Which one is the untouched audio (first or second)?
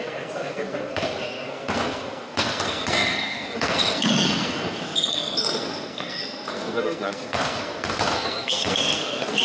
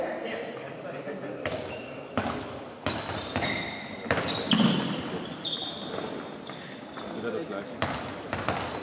second